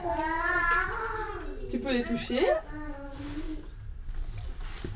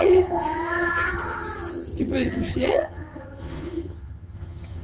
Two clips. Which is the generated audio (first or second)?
second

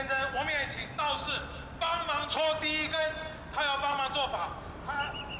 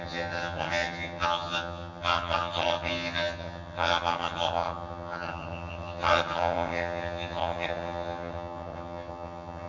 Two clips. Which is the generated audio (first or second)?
second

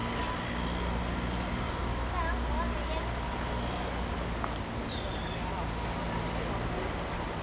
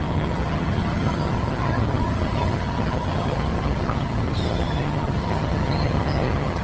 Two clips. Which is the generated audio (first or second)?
second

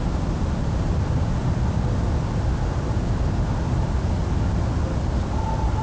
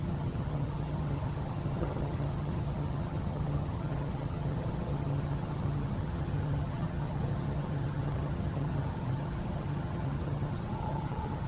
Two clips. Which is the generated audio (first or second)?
second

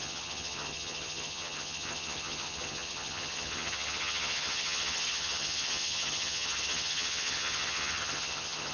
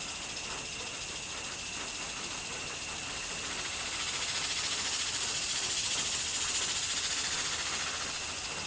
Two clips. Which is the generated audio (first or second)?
first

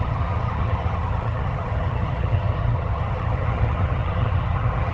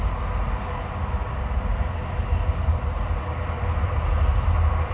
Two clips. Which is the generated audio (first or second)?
first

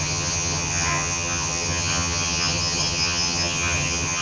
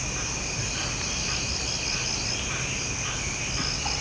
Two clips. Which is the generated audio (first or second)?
first